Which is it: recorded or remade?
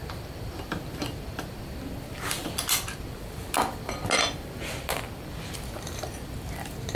remade